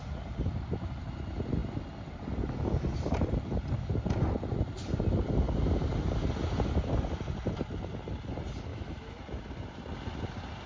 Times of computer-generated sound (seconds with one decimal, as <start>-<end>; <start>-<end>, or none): 8.7-9.2